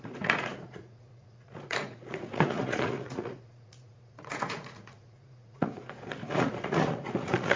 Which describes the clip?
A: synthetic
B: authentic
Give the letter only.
A